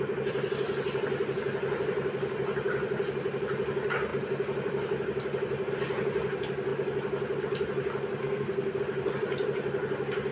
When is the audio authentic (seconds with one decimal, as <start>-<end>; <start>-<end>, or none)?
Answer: 0.0-8.2; 8.8-10.3